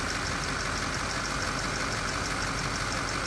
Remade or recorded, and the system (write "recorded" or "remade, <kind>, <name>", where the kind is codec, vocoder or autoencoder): recorded